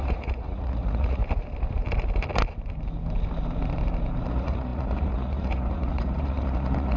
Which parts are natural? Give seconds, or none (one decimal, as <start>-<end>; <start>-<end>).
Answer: 1.2-4.3